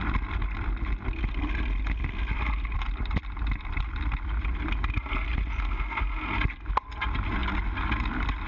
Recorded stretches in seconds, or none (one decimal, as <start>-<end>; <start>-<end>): 0.0-8.5